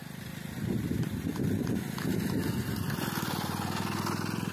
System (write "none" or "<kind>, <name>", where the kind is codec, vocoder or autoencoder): none